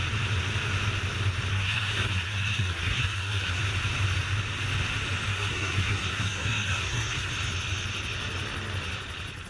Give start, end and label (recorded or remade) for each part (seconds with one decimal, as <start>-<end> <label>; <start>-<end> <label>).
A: 0.0-1.5 recorded; 1.5-3.6 remade; 3.6-5.3 recorded; 5.3-7.3 remade; 7.3-9.5 recorded